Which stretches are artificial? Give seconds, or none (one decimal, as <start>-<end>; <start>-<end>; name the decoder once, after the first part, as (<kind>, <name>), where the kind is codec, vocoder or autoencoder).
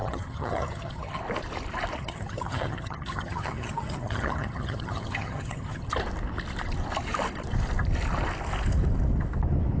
0.0-1.2 (vocoder, HiFi-GAN); 2.0-5.9